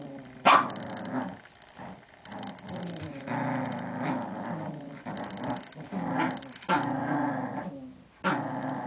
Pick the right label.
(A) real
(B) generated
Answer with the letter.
A